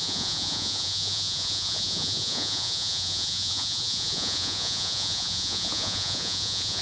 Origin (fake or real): fake